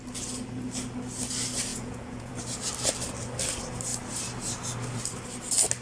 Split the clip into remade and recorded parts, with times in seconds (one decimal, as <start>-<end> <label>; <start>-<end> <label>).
0.0-1.7 recorded; 1.7-2.3 remade; 2.3-5.8 recorded